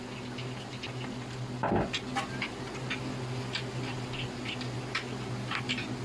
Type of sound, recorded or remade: recorded